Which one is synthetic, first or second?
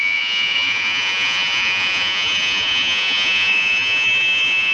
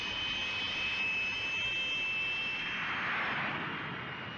first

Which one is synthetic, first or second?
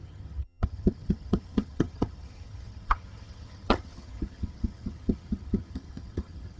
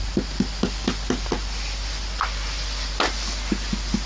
first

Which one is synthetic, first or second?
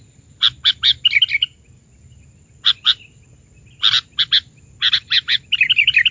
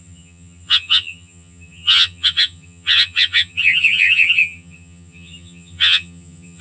second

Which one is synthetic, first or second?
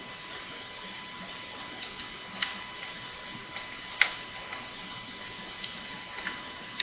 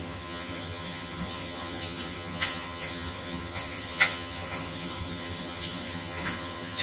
second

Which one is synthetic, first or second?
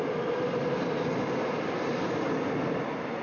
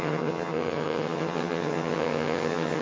second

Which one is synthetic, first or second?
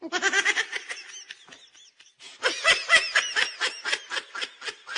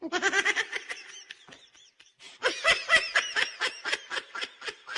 second